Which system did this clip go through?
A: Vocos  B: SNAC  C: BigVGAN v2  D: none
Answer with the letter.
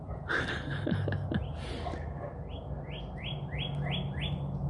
D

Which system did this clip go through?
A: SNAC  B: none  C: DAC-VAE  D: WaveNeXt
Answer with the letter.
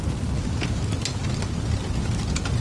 B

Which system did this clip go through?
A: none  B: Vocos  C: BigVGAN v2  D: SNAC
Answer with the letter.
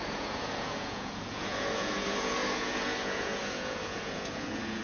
B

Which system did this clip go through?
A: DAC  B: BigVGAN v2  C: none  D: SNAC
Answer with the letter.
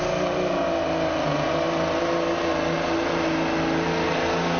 C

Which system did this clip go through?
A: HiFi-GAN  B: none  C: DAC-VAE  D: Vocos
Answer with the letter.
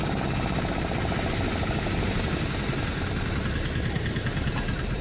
B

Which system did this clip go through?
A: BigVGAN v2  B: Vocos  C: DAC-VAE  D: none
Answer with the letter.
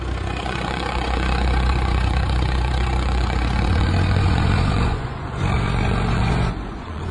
B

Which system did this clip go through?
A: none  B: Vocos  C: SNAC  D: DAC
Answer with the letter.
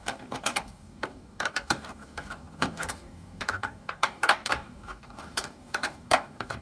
D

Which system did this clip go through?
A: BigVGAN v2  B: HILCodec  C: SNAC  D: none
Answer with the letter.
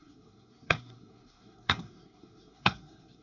C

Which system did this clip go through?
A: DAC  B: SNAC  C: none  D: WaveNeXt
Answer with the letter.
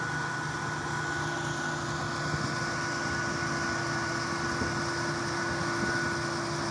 C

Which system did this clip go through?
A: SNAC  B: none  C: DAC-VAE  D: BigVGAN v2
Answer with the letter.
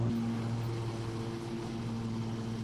B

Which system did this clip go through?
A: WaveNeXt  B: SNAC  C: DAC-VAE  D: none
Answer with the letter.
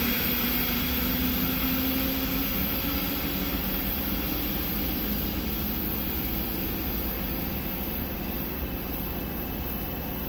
D